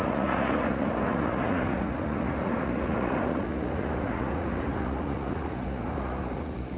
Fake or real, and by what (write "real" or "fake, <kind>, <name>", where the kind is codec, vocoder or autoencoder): fake, vocoder, Vocos